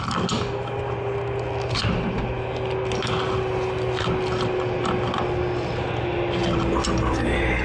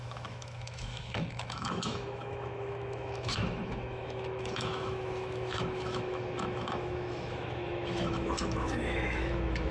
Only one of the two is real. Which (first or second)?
first